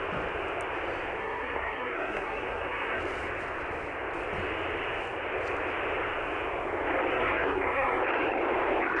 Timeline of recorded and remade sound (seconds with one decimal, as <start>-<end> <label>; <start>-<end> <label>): 0.0-1.2 recorded; 1.2-3.0 remade; 3.0-7.1 recorded; 7.1-8.0 remade; 8.0-9.0 recorded